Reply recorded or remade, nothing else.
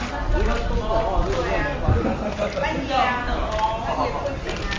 recorded